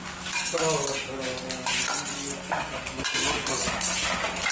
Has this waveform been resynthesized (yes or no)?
no